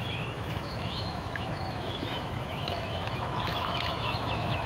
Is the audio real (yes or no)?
no